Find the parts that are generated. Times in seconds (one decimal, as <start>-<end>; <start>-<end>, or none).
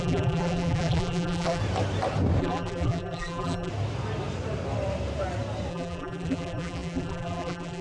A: 0.0-1.6; 2.4-3.7; 5.7-7.8